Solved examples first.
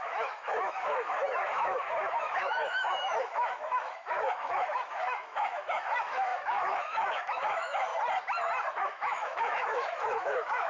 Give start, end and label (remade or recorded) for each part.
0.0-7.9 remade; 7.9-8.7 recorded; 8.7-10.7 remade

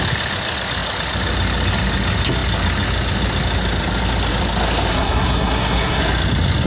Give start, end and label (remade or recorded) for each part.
0.0-4.9 recorded; 4.9-6.0 remade; 6.0-6.7 recorded

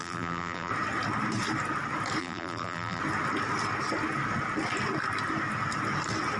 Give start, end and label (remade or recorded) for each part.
0.0-0.7 remade; 0.7-2.2 recorded; 2.2-3.0 remade; 3.0-6.4 recorded

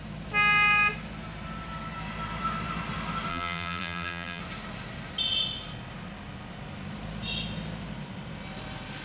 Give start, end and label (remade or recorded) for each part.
0.0-3.3 recorded; 3.3-4.4 remade; 4.4-9.0 recorded